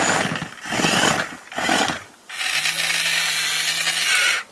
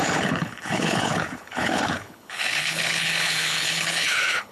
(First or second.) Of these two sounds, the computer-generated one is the second